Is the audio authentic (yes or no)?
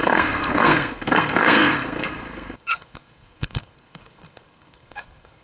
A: no